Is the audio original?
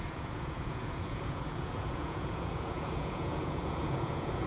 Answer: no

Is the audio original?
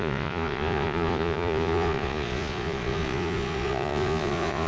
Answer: no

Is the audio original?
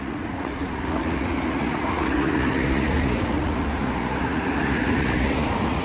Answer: no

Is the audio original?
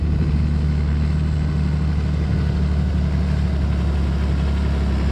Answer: yes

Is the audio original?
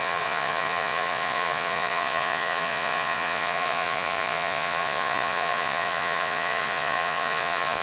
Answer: no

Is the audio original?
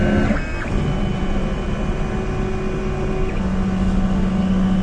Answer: yes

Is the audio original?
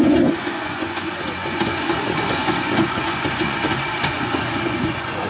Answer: no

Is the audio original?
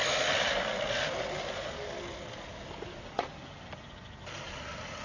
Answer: yes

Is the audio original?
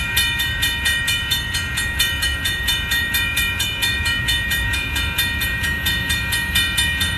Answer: no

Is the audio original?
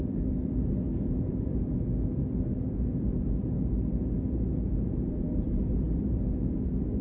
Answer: no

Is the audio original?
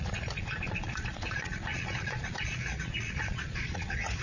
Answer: no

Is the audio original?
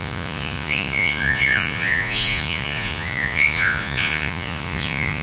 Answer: no